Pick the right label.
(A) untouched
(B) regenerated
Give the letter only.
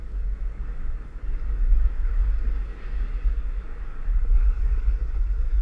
B